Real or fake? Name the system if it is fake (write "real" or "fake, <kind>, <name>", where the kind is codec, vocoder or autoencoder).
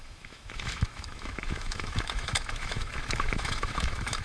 fake, autoencoder, DAC-VAE